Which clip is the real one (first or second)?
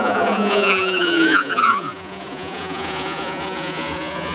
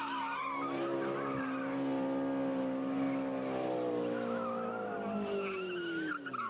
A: second